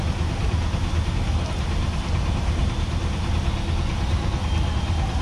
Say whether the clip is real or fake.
real